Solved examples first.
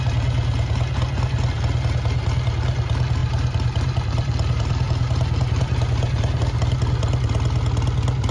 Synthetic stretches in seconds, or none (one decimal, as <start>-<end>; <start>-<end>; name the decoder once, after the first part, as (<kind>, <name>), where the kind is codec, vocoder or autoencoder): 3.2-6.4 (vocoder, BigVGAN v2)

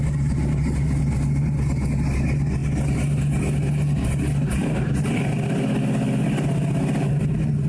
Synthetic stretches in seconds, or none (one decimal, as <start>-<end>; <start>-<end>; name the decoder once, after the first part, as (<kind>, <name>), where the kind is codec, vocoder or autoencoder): none

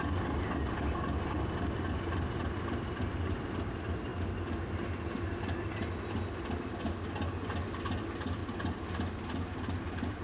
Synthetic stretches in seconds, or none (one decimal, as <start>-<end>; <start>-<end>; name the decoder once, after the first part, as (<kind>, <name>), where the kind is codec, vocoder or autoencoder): none